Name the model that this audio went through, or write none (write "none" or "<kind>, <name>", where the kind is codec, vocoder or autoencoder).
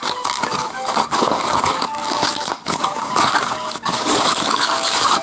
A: codec, DAC